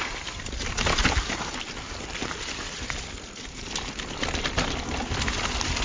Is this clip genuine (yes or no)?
yes